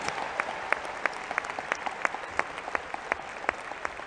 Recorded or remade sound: recorded